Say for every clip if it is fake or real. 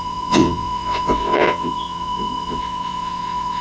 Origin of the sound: fake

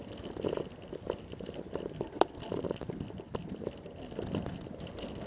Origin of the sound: real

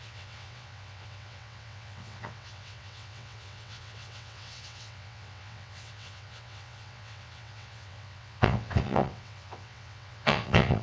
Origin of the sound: fake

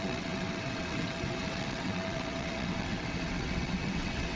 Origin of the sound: fake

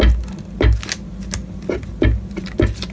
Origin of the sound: real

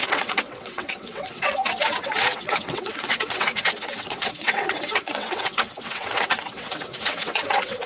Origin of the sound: fake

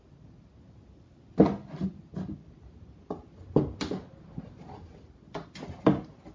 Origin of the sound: real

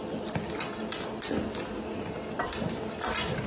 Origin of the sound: real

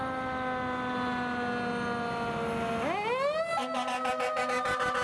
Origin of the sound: real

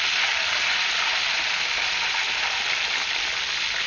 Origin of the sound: real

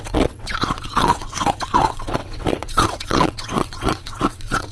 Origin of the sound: fake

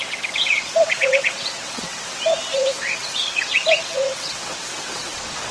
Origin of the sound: fake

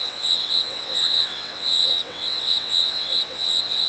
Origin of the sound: fake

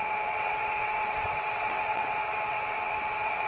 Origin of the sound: fake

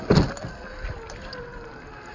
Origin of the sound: real